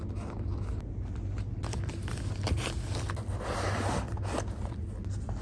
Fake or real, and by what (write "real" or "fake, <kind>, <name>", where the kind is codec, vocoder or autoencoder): real